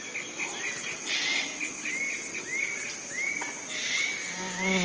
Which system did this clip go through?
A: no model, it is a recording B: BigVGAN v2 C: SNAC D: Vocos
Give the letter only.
A